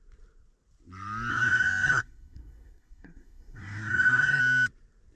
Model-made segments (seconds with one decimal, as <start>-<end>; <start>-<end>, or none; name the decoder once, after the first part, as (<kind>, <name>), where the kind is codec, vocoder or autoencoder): 1.3-4.4 (codec, SNAC)